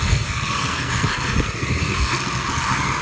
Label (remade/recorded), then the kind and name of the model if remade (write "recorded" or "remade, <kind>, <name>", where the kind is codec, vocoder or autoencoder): remade, codec, SNAC